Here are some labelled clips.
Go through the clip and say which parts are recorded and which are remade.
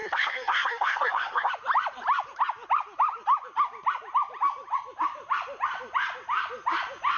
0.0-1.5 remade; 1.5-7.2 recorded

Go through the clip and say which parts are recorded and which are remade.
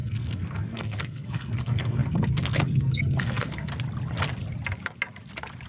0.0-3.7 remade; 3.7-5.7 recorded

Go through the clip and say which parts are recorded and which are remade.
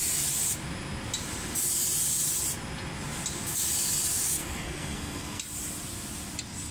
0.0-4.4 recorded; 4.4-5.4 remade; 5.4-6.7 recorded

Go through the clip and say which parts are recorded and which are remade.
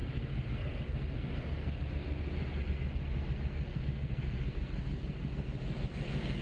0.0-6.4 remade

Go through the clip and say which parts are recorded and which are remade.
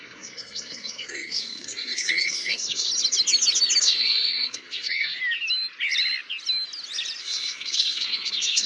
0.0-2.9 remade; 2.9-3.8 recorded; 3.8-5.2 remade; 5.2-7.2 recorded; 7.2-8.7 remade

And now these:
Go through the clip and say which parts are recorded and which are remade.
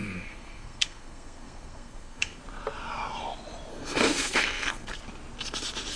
0.0-2.4 remade; 2.4-3.7 recorded; 3.7-5.0 remade; 5.0-6.0 recorded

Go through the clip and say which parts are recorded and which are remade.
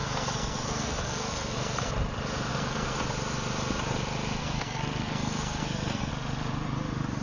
0.0-1.9 remade; 1.9-2.5 recorded; 2.5-3.0 remade; 3.0-4.4 recorded; 4.4-6.1 remade; 6.1-7.2 recorded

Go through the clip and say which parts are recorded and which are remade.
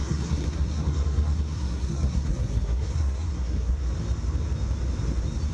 0.0-3.8 remade; 3.8-5.5 recorded